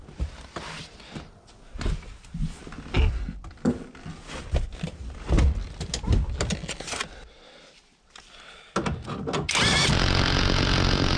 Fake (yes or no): no